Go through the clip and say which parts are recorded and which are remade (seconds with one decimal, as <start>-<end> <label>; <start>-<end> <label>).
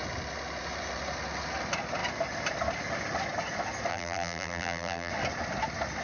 0.0-3.9 recorded; 3.9-5.1 remade; 5.1-6.0 recorded